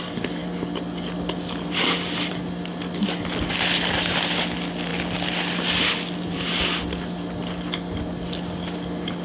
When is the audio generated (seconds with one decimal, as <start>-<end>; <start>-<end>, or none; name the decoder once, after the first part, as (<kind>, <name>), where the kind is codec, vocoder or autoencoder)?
none